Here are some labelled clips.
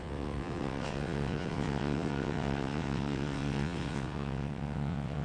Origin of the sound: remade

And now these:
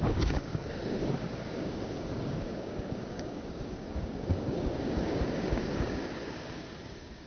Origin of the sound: remade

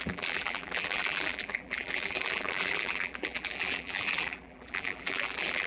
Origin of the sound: remade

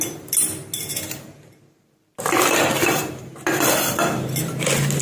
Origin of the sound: recorded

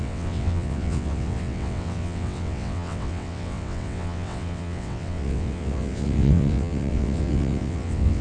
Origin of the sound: remade